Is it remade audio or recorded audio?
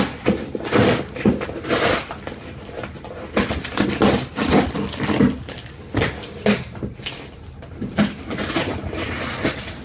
recorded